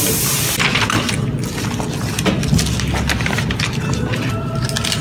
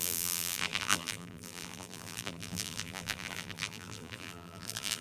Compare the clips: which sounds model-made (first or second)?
second